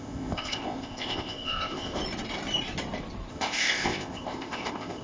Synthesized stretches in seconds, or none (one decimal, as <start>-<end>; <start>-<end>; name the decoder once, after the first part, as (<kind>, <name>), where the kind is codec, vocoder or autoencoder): 0.0-2.0 (codec, ZipCodec); 3.3-5.0